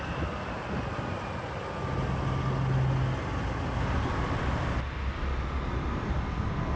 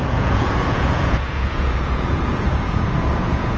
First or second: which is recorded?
first